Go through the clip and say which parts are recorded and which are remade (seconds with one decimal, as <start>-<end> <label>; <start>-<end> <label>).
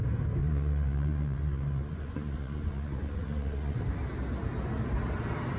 0.0-0.4 recorded; 0.4-3.8 remade; 3.8-5.6 recorded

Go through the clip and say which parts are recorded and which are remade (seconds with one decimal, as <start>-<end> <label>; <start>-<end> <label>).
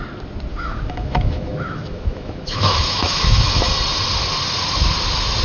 0.0-0.5 recorded; 0.5-3.7 remade; 3.7-5.4 recorded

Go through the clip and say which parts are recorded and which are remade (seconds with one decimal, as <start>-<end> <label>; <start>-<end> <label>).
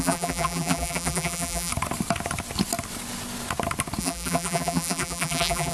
0.0-1.7 remade; 1.7-4.0 recorded; 4.0-5.7 remade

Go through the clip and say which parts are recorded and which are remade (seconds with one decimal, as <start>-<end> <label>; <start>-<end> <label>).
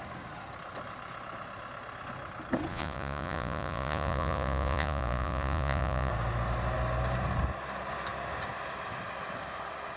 0.0-2.7 recorded; 2.7-6.1 remade; 6.1-10.0 recorded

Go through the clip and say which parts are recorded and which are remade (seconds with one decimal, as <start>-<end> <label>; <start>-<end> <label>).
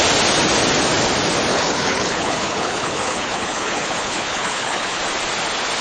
0.0-1.5 recorded; 1.5-5.0 remade; 5.0-5.8 recorded